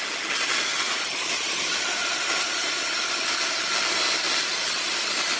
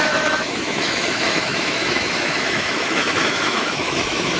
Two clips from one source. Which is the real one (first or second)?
first